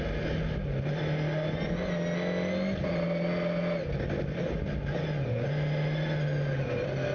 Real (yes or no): yes